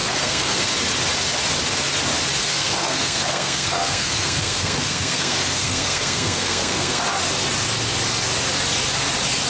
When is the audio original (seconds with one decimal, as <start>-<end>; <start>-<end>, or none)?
0.7-2.5; 7.0-9.5